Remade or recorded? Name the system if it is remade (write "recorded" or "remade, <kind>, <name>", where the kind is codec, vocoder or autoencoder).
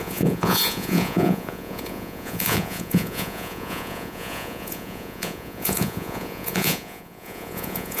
remade, vocoder, Vocos